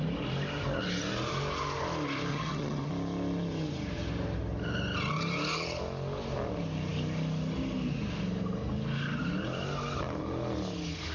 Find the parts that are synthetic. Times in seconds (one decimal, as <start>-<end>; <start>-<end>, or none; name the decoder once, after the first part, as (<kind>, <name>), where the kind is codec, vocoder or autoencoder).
2.3-2.9 (vocoder, HiFi-GAN)